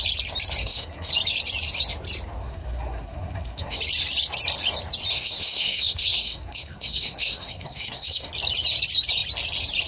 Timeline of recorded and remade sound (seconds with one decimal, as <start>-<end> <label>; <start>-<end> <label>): 0.0-0.6 recorded; 0.6-1.1 remade; 1.1-2.4 recorded; 2.4-3.8 remade; 3.8-5.1 recorded; 5.1-8.3 remade; 8.3-9.9 recorded